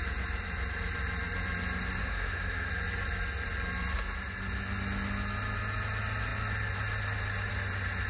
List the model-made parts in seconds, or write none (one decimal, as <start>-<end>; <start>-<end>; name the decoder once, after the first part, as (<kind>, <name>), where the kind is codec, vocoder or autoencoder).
2.0-2.7 (autoencoder, DAC-VAE)